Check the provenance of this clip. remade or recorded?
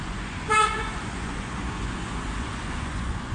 remade